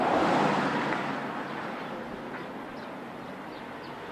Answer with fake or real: real